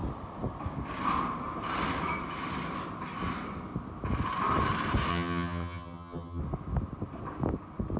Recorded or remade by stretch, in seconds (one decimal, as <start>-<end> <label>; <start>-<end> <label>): 0.0-5.1 recorded; 5.1-6.4 remade; 6.4-8.0 recorded